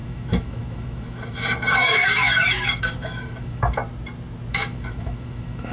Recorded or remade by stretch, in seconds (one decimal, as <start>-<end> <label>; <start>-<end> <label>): 0.0-3.8 remade; 3.8-4.5 recorded; 4.5-5.7 remade